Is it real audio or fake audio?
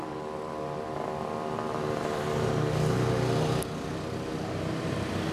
real